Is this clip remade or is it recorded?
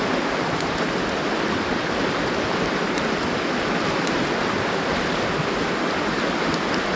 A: recorded